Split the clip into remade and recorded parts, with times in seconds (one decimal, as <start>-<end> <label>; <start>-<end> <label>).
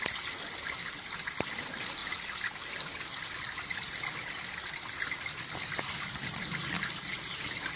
0.0-7.8 recorded